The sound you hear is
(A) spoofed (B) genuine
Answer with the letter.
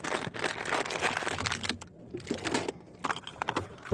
B